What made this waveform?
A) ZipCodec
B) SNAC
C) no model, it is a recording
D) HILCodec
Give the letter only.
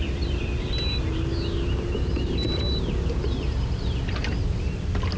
C